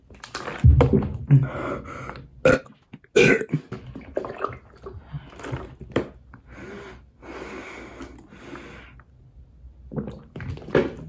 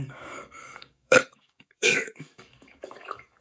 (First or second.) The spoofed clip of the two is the second